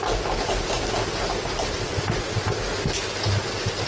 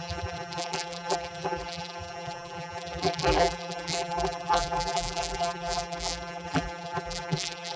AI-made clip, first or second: second